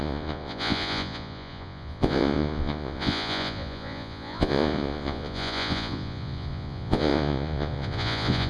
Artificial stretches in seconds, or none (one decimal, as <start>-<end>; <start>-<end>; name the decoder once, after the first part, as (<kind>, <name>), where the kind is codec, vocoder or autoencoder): 0.0-8.5 (vocoder, Vocos)